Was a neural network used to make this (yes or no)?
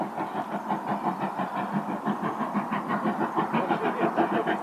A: no